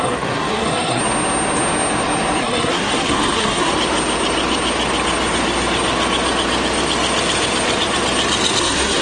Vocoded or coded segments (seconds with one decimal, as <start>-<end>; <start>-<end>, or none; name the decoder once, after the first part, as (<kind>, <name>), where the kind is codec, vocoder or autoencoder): 0.0-1.0 (codec, SNAC); 2.4-3.7; 8.6-9.0